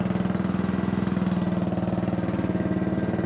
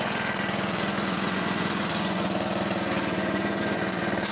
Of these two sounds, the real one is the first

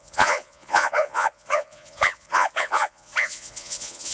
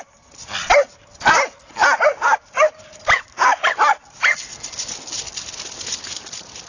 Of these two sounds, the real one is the second